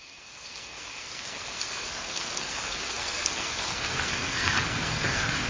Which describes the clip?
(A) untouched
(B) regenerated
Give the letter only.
B